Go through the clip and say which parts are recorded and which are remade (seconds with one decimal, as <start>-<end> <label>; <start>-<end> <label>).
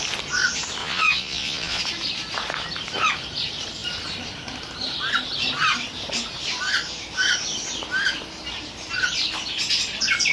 0.0-0.8 recorded; 0.8-1.8 remade; 1.8-10.3 recorded